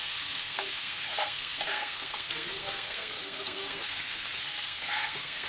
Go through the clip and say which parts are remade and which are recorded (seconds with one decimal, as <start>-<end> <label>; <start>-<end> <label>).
0.0-5.5 remade